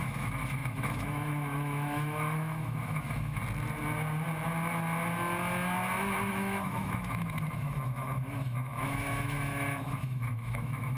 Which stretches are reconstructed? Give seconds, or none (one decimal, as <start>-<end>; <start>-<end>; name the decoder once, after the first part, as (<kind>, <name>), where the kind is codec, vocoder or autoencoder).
0.0-3.4 (autoencoder, DAC-VAE); 6.3-11.0